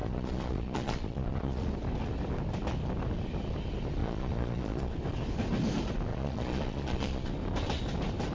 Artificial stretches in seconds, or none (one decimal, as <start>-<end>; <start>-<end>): 0.0-1.7; 4.0-4.9; 6.1-7.3